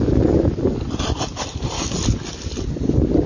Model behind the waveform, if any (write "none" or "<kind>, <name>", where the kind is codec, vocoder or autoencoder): vocoder, BigVGAN v2